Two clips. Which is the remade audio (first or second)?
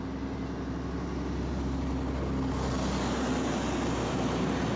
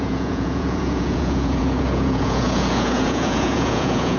second